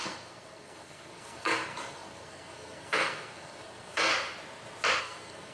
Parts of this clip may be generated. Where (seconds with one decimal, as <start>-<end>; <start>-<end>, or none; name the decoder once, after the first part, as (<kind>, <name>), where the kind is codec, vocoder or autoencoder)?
0.0-4.1 (codec, SNAC); 5.0-5.5